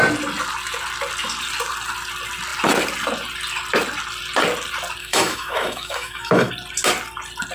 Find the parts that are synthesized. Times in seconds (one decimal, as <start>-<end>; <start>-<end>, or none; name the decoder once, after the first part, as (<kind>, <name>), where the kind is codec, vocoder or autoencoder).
5.0-6.5 (autoencoder, DAC-VAE)